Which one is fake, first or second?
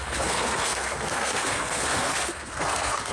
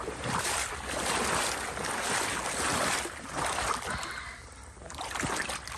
first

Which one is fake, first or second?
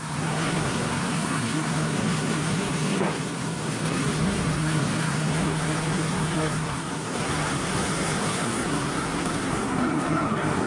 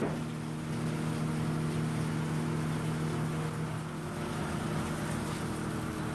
first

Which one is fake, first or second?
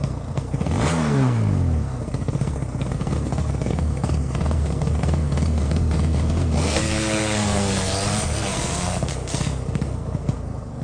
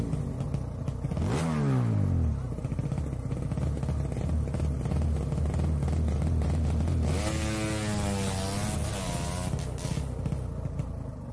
first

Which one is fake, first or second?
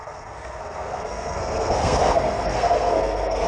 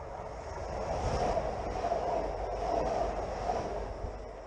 first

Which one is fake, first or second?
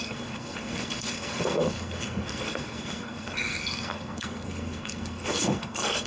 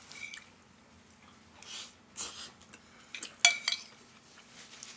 first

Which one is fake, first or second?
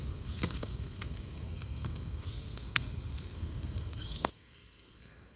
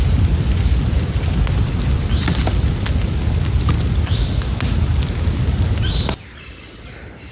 first